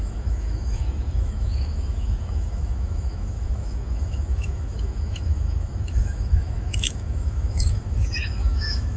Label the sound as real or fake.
fake